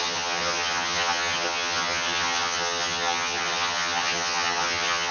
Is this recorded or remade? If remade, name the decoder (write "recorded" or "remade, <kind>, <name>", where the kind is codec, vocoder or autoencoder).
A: remade, vocoder, HiFi-GAN